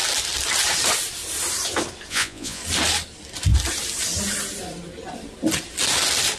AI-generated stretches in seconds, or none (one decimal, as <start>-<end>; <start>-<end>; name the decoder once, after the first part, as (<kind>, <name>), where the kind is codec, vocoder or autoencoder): 2.1-2.6 (vocoder, Vocos)